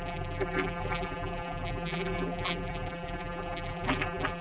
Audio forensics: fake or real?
fake